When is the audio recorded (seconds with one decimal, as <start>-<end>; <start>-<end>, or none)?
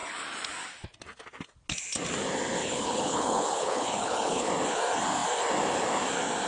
0.0-2.6; 4.5-6.5